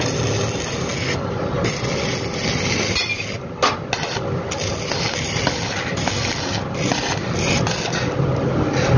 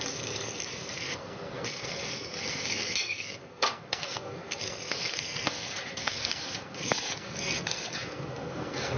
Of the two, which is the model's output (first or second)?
second